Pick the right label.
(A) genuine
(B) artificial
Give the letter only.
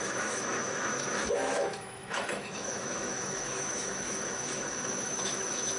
B